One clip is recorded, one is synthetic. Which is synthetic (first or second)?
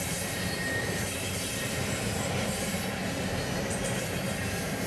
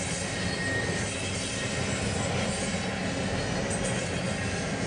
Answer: first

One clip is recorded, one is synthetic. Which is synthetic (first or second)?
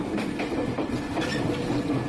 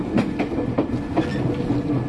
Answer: first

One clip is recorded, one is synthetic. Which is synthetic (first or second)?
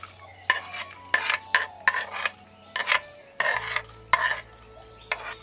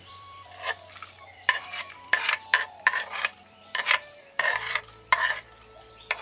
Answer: second